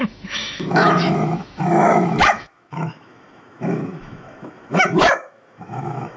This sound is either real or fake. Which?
fake